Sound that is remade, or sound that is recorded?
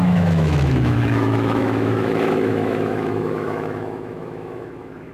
remade